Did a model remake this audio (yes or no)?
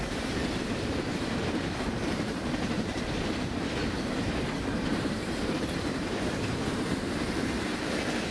yes